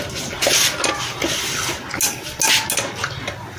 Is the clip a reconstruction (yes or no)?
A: no